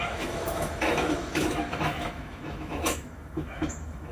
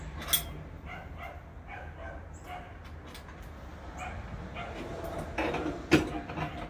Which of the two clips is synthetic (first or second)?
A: first